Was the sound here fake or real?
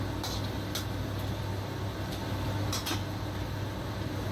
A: real